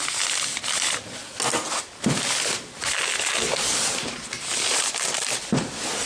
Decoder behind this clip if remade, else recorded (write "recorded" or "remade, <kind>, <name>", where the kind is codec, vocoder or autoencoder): recorded